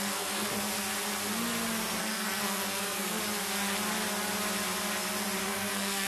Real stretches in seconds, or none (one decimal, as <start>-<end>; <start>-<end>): 0.5-2.0; 3.2-5.4